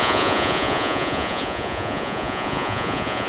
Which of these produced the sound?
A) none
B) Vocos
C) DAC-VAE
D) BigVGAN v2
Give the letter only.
B